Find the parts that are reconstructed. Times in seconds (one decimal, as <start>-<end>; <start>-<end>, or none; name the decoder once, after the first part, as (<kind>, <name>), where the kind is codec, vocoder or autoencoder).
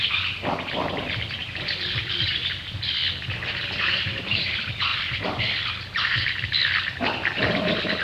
0.0-8.0 (vocoder, BigVGAN v2)